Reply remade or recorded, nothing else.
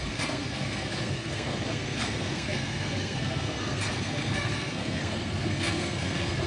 remade